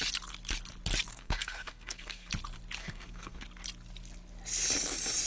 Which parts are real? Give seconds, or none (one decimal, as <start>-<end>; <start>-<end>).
0.0-1.1; 2.3-2.8; 3.4-5.3